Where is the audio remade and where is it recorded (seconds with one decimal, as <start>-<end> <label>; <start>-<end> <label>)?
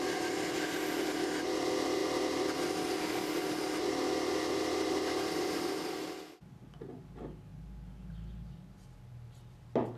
0.0-10.0 recorded